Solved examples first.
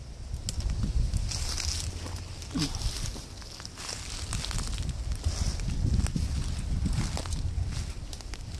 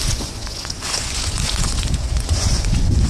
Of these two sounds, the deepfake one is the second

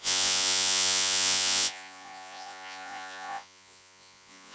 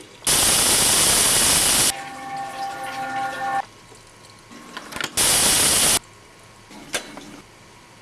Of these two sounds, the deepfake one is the first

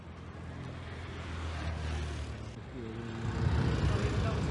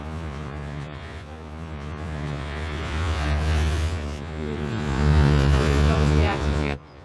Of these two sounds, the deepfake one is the second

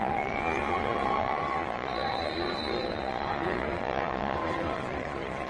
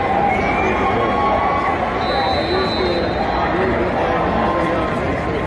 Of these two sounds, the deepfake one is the first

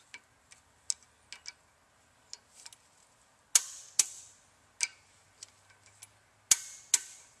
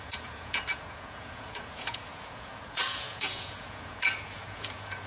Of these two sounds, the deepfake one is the second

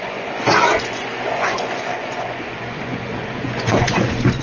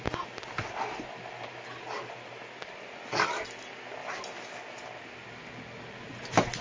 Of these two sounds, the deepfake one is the first